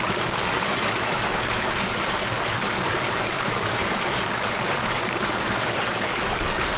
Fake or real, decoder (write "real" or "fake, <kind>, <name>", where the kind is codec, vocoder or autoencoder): fake, codec, DAC